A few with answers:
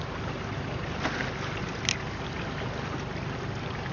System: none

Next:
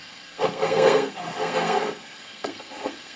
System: codec, SNAC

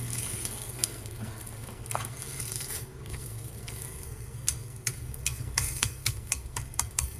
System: codec, SNAC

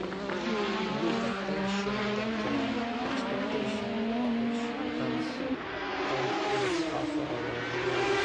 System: none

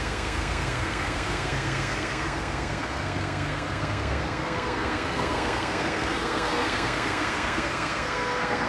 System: codec, SNAC